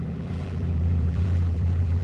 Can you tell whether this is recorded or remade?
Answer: remade